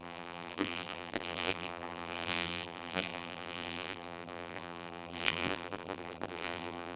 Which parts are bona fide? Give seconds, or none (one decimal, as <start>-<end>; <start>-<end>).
none